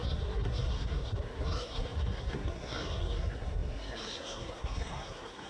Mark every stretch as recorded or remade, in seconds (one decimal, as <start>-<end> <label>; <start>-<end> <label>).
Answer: 0.0-5.5 remade